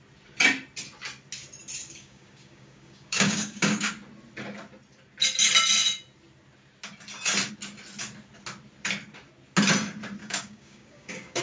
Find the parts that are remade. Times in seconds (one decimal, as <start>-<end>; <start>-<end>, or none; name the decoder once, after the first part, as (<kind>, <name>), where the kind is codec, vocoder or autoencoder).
1.8-3.9 (codec, DAC); 10.2-11.4